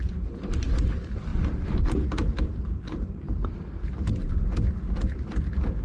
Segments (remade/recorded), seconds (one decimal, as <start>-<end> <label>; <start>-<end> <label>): 0.0-5.8 recorded